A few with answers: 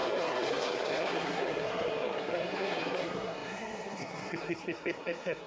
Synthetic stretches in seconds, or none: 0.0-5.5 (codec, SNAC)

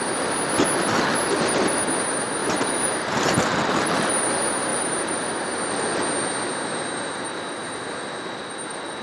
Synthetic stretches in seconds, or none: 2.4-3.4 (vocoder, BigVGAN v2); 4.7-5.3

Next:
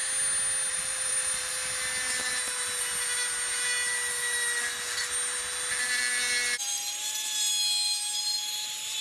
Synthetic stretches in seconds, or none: 0.7-1.5 (vocoder, BigVGAN v2)

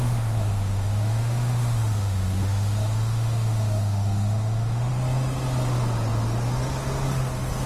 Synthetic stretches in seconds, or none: 0.0-4.9 (autoencoder, DAC-VAE)